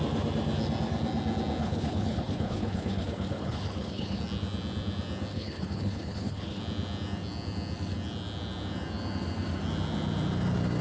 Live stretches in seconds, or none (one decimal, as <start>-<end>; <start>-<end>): 0.0-1.6; 4.2-5.3; 6.6-10.8